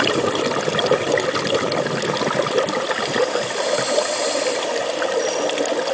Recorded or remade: recorded